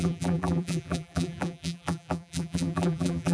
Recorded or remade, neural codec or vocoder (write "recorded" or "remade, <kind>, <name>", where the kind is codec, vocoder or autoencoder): remade, vocoder, BigVGAN v2